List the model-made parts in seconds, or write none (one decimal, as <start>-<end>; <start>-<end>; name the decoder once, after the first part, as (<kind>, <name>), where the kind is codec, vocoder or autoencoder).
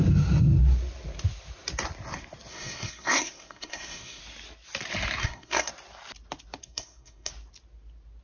2.5-4.2 (codec, SNAC); 5.2-5.7; 6.6-7.3